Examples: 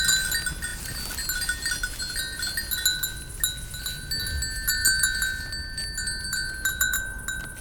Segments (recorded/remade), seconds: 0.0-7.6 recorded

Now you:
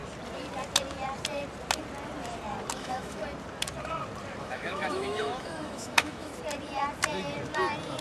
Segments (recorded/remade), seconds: 0.0-2.7 recorded; 2.7-3.2 remade; 3.2-4.4 recorded; 4.4-6.3 remade; 6.3-8.0 recorded

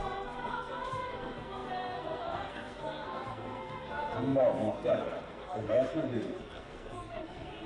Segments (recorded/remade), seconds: 0.0-7.7 remade